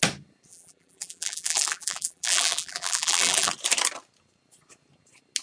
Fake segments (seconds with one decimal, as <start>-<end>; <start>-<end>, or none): 0.5-3.5